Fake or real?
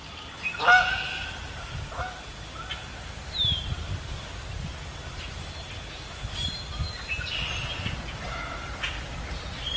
real